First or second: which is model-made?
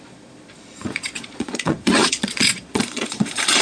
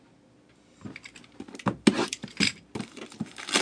first